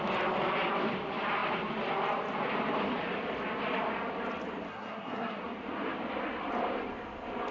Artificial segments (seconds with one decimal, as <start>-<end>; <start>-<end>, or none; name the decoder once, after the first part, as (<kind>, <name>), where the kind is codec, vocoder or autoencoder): 4.7-5.4 (codec, SNAC)